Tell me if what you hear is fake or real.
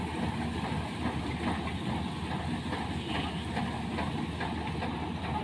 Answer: real